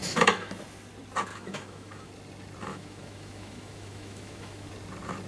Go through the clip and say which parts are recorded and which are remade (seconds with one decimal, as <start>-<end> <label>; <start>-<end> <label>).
0.0-0.5 remade; 0.5-1.3 recorded; 1.3-2.1 remade; 2.1-2.7 recorded; 2.7-4.7 remade; 4.7-5.3 recorded